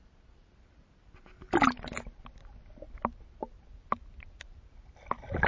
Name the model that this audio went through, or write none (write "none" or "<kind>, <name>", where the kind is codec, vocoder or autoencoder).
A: none